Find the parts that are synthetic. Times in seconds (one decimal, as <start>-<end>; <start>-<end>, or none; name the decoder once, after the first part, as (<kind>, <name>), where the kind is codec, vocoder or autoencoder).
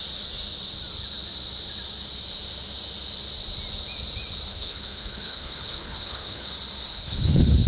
4.5-6.5 (codec, HILCodec); 6.9-7.7